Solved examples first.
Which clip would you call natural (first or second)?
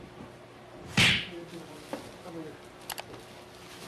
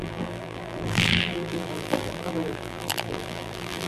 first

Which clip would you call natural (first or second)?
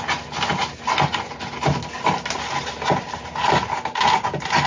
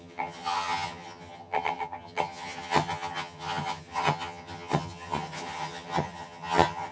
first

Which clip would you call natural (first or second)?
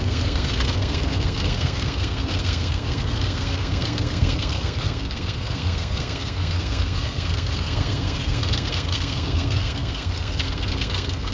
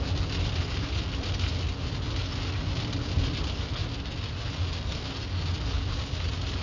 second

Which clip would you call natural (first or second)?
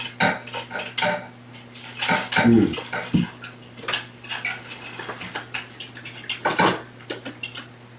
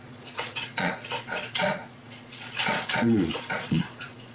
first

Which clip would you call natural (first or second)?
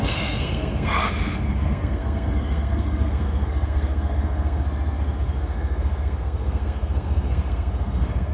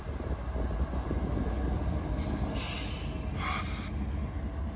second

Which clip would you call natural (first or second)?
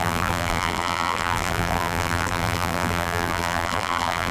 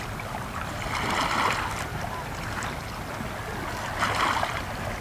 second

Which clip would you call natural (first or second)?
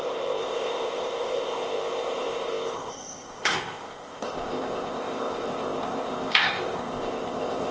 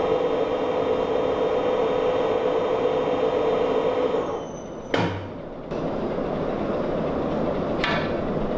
second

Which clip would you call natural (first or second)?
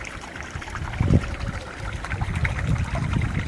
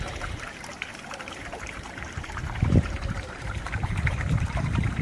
first